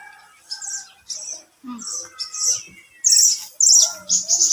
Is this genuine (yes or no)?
yes